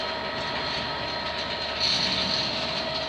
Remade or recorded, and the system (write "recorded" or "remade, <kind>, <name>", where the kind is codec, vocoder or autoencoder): recorded